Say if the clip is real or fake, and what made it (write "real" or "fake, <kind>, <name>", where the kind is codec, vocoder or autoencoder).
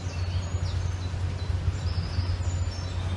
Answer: real